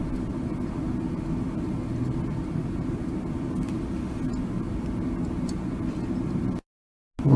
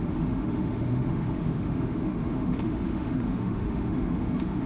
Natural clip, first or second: first